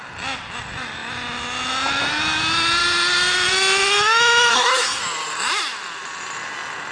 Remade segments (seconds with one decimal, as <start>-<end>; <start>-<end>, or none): 4.5-5.0